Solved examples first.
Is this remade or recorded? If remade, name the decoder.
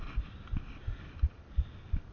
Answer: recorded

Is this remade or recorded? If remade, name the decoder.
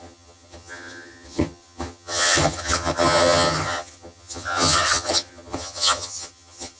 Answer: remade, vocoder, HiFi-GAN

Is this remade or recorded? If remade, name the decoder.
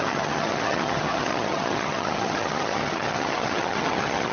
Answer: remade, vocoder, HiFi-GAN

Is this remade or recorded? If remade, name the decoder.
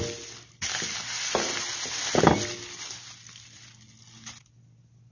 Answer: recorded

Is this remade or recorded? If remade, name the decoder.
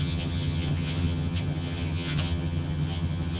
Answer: remade, vocoder, HiFi-GAN